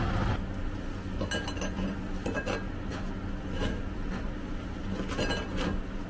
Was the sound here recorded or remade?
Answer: recorded